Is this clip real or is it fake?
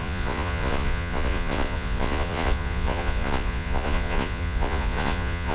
fake